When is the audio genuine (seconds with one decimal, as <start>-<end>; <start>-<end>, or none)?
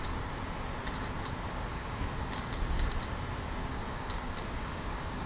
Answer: 0.0-1.7; 2.9-3.6